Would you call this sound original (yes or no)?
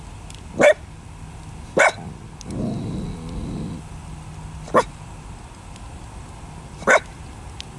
yes